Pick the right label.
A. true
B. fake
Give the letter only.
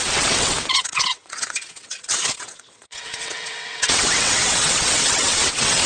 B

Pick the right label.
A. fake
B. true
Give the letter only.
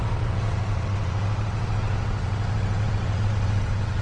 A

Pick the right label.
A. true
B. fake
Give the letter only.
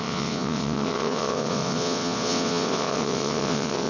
B